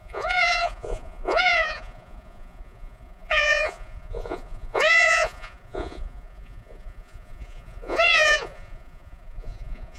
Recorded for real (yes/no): no